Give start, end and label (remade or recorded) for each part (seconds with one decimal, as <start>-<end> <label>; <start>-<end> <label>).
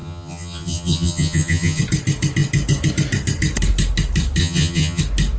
0.0-1.8 remade; 1.8-4.4 recorded; 4.4-5.0 remade; 5.0-5.4 recorded